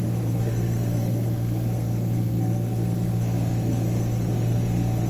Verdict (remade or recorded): remade